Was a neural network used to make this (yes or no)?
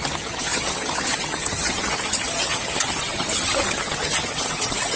yes